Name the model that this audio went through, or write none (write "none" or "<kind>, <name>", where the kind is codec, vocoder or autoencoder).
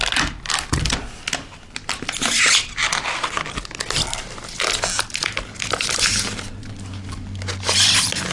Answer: none